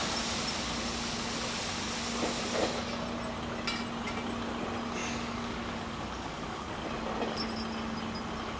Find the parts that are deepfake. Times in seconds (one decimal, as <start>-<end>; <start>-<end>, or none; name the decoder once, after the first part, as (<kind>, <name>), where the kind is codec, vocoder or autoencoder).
5.0-6.7 (codec, DAC)